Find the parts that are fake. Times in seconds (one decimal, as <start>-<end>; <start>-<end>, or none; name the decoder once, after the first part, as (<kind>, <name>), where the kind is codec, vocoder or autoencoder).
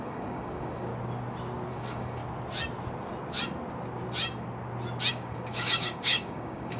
0.0-0.9 (codec, DAC); 1.7-2.2; 5.1-6.8